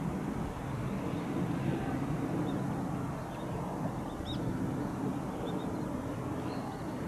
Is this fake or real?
real